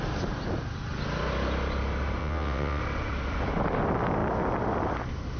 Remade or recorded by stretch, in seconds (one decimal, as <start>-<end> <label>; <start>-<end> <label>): 0.0-2.2 recorded; 2.2-2.8 remade; 2.8-5.4 recorded